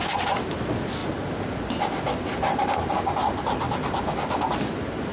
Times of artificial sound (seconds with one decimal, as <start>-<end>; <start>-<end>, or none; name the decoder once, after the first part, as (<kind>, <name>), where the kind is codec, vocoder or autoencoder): none